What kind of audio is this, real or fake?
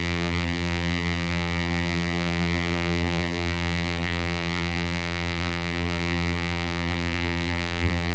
fake